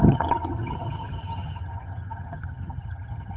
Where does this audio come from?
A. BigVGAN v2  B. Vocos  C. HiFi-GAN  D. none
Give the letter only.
C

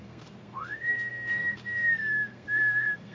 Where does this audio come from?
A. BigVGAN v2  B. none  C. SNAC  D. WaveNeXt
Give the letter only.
C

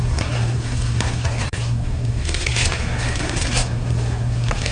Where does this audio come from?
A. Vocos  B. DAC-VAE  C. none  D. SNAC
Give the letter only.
D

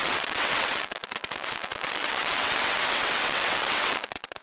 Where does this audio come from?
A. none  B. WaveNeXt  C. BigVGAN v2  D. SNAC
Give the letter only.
B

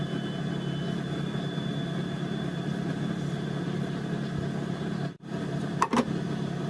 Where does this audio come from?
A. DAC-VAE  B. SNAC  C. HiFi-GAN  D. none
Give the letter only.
D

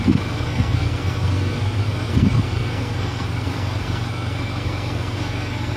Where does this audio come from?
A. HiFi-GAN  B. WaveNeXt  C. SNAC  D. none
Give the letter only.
C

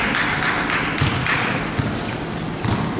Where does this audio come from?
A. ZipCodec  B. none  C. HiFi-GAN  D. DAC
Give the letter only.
B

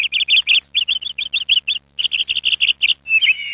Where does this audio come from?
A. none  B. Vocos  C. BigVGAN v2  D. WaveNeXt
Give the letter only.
A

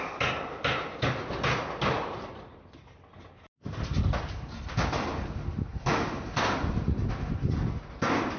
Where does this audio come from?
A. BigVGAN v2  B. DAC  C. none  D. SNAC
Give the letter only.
C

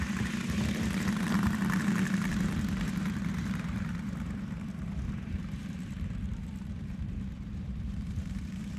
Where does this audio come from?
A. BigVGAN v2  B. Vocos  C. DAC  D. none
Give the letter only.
A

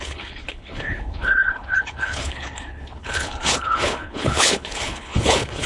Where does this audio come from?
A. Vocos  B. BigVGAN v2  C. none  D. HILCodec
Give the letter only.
D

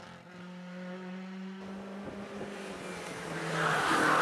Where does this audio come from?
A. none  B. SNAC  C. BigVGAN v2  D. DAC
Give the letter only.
A